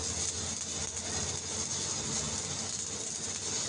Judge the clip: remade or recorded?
recorded